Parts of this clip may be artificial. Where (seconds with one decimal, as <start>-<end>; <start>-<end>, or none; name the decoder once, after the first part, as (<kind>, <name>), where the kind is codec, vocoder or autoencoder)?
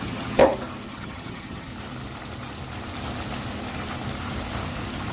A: 0.0-0.4 (vocoder, HiFi-GAN); 0.9-1.7